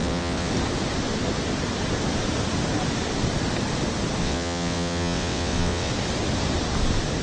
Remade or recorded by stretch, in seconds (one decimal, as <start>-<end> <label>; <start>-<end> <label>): 0.0-0.5 remade; 0.5-4.2 recorded; 4.2-5.9 remade; 5.9-7.2 recorded